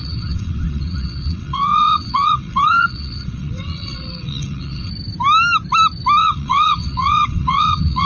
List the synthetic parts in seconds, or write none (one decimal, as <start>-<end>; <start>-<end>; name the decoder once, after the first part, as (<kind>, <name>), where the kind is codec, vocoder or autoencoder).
0.0-4.9 (vocoder, WaveNeXt); 6.2-8.1